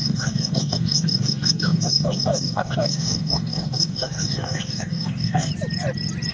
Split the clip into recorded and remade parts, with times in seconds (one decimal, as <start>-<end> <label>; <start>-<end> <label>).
0.0-5.5 remade; 5.5-6.3 recorded